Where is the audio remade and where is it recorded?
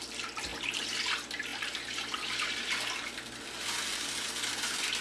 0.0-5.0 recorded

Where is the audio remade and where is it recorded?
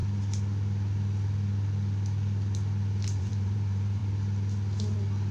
0.0-3.2 recorded; 3.2-4.0 remade; 4.0-5.3 recorded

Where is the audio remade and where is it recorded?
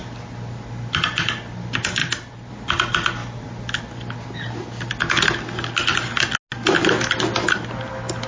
0.0-1.2 remade; 1.2-2.0 recorded; 2.0-2.5 remade; 2.5-8.3 recorded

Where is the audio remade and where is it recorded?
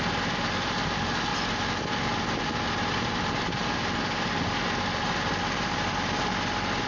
0.0-1.3 recorded; 1.3-5.4 remade; 5.4-6.9 recorded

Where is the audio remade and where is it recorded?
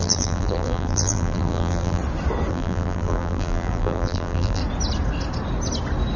0.0-2.0 remade; 2.0-2.5 recorded; 2.5-4.6 remade; 4.6-6.2 recorded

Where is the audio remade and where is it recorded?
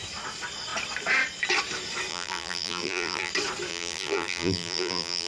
0.0-2.1 recorded; 2.1-3.3 remade; 3.3-3.7 recorded; 3.7-5.3 remade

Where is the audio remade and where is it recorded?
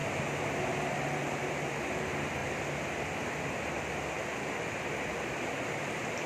0.0-0.6 remade; 0.6-6.3 recorded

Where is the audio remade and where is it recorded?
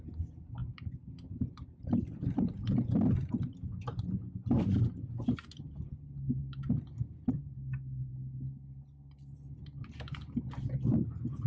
0.0-0.6 recorded; 0.6-3.3 remade; 3.3-11.5 recorded